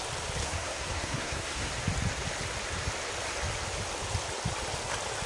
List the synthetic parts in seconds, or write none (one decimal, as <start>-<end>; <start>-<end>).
0.4-1.7